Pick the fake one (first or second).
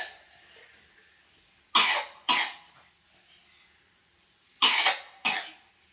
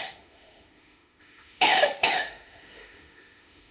second